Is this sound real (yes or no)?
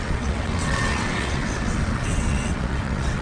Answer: no